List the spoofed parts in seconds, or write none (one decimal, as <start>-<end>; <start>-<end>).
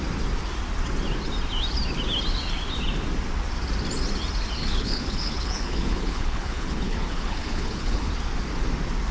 4.6-8.1